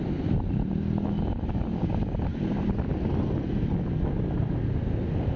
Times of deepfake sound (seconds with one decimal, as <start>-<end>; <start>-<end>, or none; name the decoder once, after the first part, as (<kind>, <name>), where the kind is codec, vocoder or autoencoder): none